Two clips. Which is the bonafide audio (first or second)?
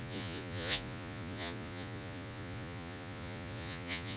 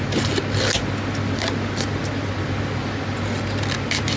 second